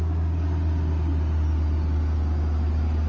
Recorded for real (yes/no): yes